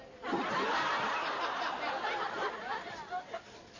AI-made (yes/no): no